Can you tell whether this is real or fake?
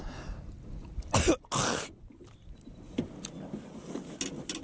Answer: real